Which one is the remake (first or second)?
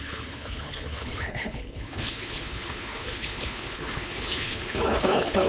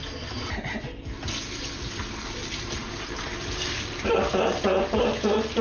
first